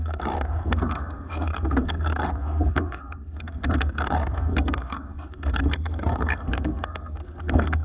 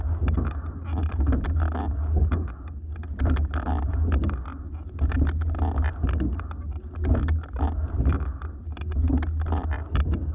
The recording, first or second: second